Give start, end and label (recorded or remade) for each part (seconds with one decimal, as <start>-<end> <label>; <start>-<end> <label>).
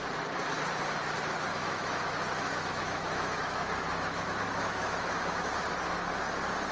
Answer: 0.0-1.5 recorded; 1.5-5.5 remade; 5.5-6.7 recorded